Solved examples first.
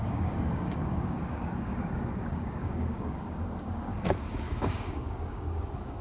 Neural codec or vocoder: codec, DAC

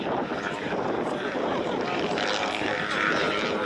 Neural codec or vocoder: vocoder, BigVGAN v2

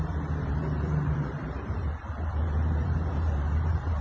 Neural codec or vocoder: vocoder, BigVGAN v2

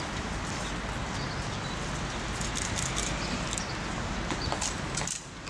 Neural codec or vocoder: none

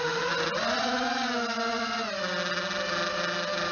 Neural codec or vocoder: none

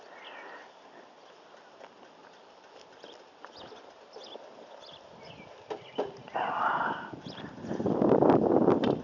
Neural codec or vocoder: none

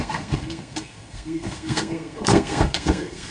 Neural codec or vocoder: codec, SNAC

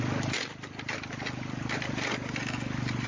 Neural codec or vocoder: none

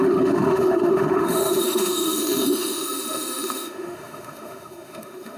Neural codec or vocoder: autoencoder, DAC-VAE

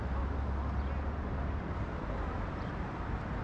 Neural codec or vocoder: none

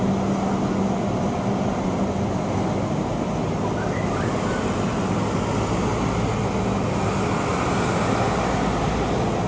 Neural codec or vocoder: none